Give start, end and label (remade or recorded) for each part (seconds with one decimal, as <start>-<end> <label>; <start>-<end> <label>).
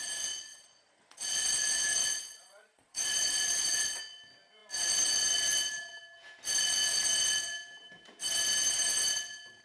0.0-0.5 recorded; 0.5-1.5 remade; 1.5-2.0 recorded; 2.0-4.0 remade; 4.0-9.6 recorded